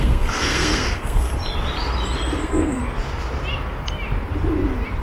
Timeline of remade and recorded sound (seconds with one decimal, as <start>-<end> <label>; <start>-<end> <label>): 0.0-1.3 remade; 1.3-2.4 recorded; 2.4-2.8 remade; 2.8-5.0 recorded